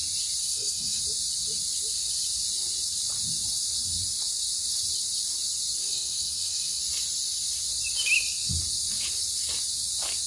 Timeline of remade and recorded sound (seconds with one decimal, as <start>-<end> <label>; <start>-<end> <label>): 0.0-0.4 recorded; 0.4-1.0 remade; 1.0-5.8 recorded; 5.8-6.8 remade; 6.8-10.3 recorded